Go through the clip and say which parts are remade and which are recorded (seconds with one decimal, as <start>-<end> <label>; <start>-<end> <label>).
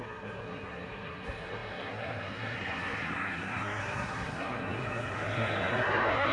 0.0-6.3 remade